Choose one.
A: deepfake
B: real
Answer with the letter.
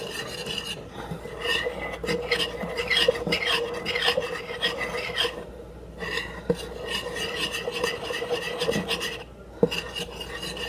B